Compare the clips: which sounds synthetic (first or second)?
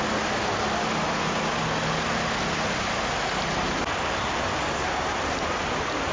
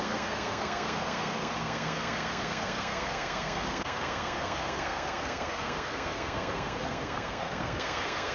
second